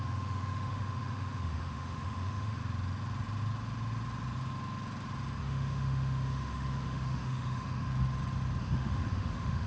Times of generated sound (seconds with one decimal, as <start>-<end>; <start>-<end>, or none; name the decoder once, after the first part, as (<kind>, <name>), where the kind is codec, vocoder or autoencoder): 0.0-2.6 (autoencoder, DAC-VAE); 5.4-7.9; 8.6-9.7